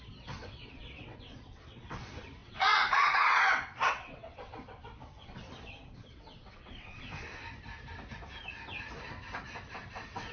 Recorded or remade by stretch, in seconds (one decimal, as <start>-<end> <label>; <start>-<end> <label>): 0.0-7.4 remade; 7.4-9.7 recorded; 9.7-10.3 remade